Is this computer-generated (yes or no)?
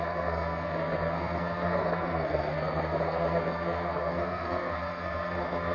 yes